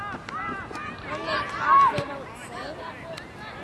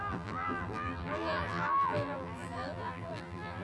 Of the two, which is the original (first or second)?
first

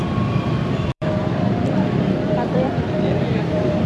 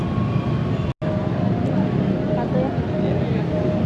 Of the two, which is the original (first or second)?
second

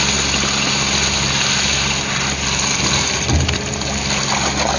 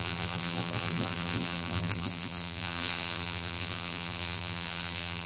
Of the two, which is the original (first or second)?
first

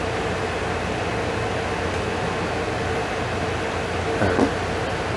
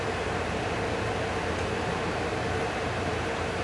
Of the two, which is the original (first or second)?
first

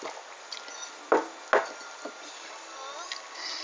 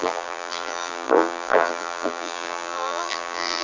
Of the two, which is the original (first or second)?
first